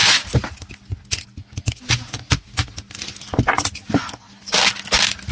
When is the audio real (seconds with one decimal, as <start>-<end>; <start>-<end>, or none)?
0.0-2.6; 3.8-5.3